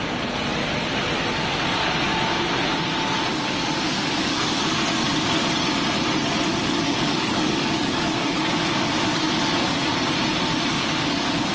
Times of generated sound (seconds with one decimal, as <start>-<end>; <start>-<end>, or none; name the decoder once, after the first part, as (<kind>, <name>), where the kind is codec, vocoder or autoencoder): 3.3-4.6 (codec, DAC); 6.5-9.9; 10.7-11.5